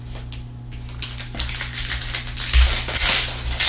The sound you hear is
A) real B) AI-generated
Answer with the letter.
A